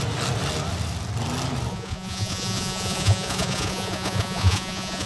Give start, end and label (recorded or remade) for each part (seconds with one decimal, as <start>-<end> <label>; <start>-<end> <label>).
0.0-1.7 recorded; 1.7-5.1 remade